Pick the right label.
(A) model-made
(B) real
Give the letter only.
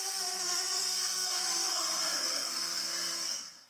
A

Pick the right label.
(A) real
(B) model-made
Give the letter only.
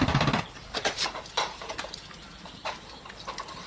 A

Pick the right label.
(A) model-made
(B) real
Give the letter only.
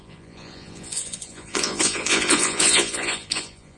A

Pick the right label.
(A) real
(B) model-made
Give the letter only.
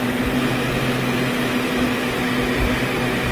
A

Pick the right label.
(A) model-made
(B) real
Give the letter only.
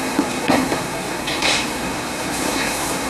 A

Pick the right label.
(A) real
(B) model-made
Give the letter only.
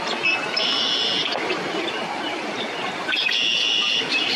A